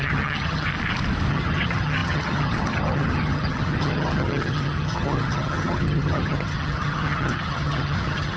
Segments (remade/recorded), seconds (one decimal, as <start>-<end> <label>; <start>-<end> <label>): 0.0-0.7 remade; 0.7-1.3 recorded; 1.3-8.4 remade